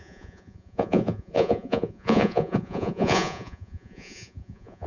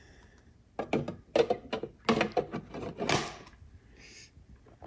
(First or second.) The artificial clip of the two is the first